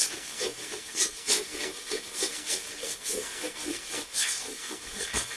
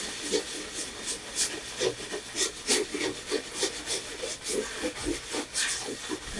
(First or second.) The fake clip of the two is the first